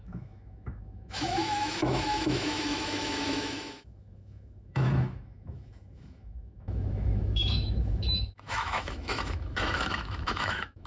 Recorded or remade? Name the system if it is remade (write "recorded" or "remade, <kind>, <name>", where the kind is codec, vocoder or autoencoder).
remade, autoencoder, DAC-VAE